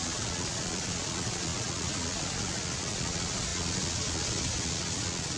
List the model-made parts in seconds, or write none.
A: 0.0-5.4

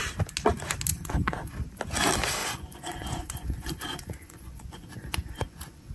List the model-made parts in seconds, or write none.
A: 0.9-1.5; 2.4-5.9

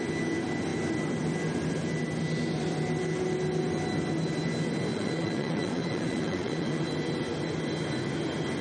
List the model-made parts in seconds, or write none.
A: 4.9-6.8

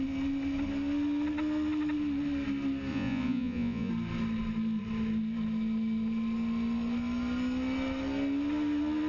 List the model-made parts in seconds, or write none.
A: 2.9-3.9

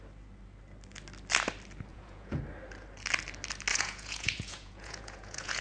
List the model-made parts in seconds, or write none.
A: 1.9-2.4; 3.7-5.6

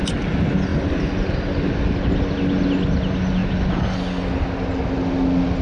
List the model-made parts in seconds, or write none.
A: none

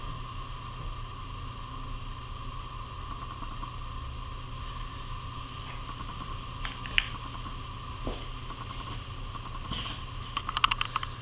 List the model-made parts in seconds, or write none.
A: none